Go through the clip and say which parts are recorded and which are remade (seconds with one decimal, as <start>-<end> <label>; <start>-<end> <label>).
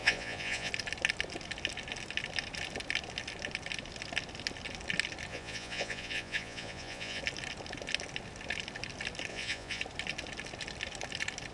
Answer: 0.0-0.7 remade; 0.7-5.3 recorded; 5.3-7.2 remade; 7.2-9.3 recorded; 9.3-9.8 remade; 9.8-11.5 recorded